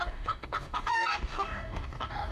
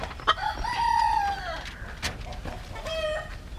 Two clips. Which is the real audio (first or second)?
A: second